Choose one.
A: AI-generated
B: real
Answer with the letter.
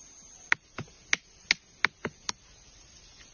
B